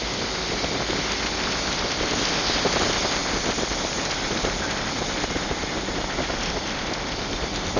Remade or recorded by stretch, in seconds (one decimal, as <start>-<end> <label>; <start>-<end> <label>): 0.0-7.8 recorded